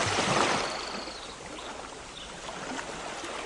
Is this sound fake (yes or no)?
no